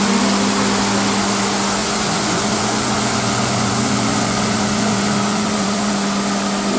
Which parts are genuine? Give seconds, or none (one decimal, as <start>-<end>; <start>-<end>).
0.0-1.8; 5.9-6.8